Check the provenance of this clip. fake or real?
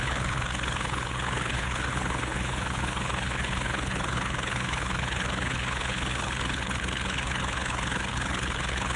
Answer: fake